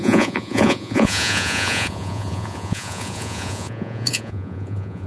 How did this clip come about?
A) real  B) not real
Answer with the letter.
B